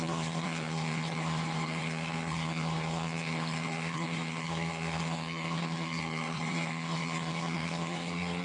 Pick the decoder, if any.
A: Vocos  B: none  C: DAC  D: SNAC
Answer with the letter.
D